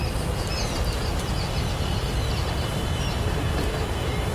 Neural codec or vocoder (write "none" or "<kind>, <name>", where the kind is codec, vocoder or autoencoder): vocoder, BigVGAN v2